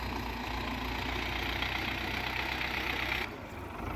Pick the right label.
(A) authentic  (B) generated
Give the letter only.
A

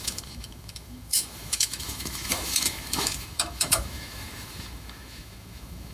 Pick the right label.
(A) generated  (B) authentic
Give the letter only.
A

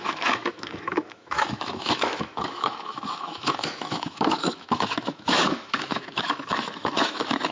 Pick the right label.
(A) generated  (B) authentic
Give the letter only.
A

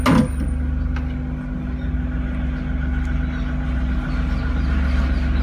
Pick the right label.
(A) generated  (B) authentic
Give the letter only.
B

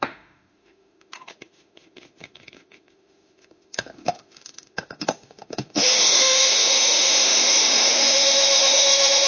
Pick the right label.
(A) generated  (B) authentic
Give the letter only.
A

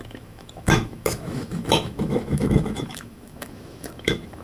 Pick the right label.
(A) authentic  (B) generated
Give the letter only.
B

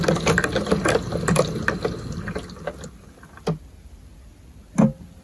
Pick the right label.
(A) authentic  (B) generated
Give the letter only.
A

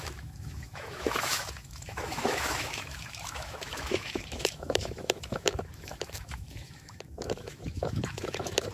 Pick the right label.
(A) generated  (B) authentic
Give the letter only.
A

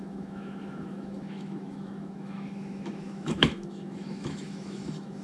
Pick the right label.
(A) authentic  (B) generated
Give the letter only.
B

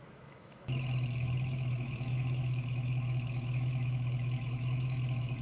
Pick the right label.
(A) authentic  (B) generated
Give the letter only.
B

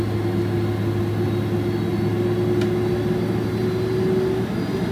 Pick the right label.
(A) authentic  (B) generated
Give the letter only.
A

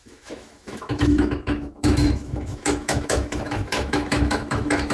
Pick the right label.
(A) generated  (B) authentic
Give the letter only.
A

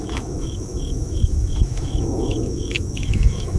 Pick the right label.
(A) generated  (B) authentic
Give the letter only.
A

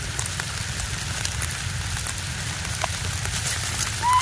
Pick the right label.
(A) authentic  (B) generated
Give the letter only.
A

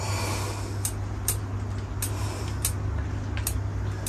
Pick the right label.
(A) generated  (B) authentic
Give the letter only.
B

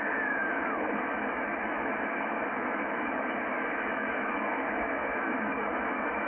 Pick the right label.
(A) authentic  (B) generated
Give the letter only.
B